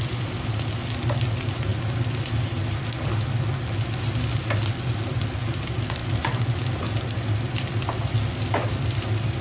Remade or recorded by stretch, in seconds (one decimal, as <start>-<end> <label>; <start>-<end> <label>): 0.0-9.4 recorded